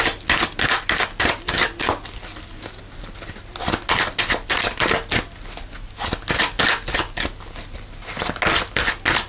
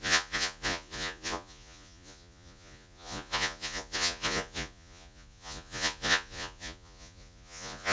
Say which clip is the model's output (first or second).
second